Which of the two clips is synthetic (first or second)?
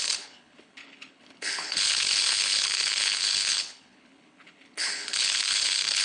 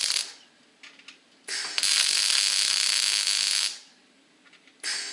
first